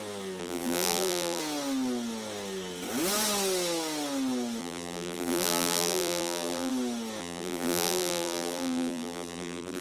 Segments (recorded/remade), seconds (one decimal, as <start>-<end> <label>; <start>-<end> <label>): 0.0-0.4 recorded; 0.4-1.4 remade; 1.4-4.6 recorded; 4.6-6.7 remade; 6.7-7.2 recorded; 7.2-9.8 remade